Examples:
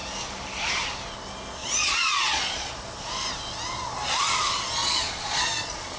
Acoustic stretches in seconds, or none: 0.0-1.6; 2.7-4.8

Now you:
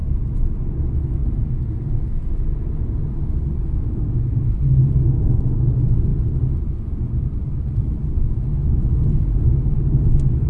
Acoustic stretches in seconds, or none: 0.6-10.5

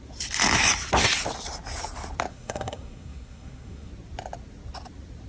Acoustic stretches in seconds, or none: 0.0-2.3; 3.9-5.3

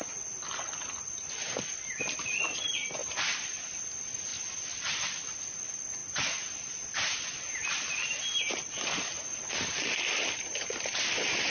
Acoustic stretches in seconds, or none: 0.0-3.0; 3.9-4.3; 5.2-11.5